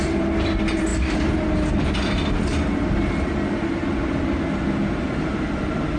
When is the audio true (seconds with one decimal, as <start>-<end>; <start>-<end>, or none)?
0.0-6.0